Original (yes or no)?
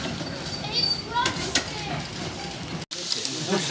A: yes